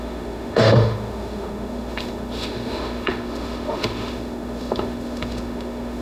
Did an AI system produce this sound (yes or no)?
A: yes